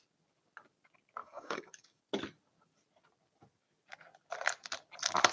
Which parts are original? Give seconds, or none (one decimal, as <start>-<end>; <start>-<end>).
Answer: 0.0-1.2; 2.0-5.3